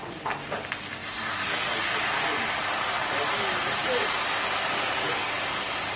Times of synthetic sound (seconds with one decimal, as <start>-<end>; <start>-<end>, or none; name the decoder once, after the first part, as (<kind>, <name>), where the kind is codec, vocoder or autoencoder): none